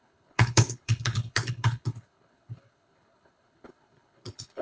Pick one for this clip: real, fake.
fake